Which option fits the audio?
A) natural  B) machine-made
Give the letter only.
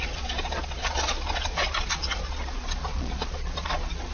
B